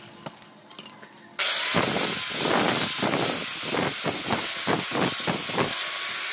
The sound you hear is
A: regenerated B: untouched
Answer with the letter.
B